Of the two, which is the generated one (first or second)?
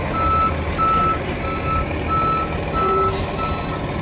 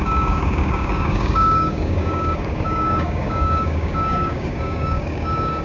second